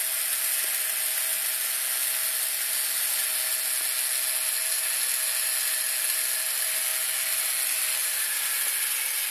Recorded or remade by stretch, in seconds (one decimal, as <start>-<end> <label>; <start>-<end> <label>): 0.0-8.0 recorded; 8.0-8.5 remade; 8.5-9.3 recorded